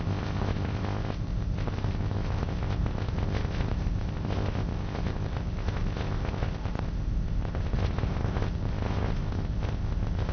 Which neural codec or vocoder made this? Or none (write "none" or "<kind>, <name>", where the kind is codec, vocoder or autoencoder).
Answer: codec, ZipCodec